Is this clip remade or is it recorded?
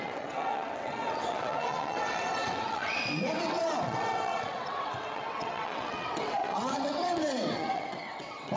remade